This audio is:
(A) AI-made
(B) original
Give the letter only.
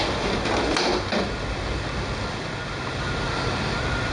B